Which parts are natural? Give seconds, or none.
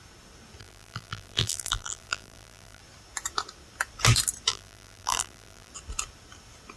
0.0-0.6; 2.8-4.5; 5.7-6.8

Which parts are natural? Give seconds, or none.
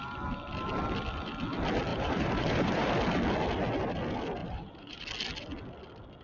0.0-1.9; 2.9-4.4; 5.0-6.2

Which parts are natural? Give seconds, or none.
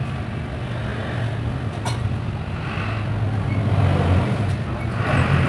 0.0-5.5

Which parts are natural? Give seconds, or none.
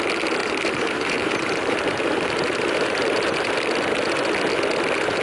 0.0-0.4; 3.5-5.2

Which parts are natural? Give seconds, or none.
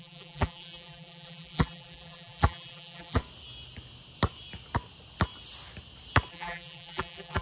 3.2-6.3